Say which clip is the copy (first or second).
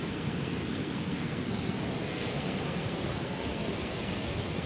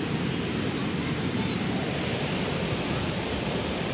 first